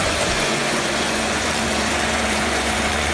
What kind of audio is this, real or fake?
fake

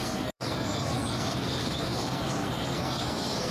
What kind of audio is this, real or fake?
fake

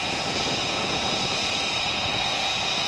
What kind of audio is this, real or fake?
fake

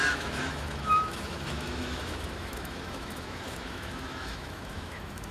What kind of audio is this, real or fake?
fake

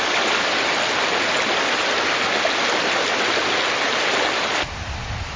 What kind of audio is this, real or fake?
real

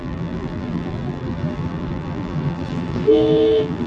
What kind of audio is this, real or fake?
fake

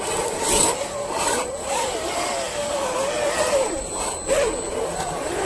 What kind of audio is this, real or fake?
real